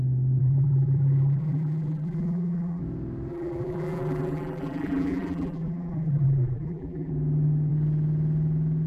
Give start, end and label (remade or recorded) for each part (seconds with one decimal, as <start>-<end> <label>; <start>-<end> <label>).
0.0-0.4 recorded; 0.4-2.8 remade; 2.8-3.3 recorded; 3.3-7.1 remade; 7.1-8.9 recorded